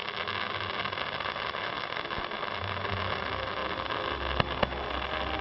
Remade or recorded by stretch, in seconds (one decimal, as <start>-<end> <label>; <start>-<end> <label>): 0.0-5.4 recorded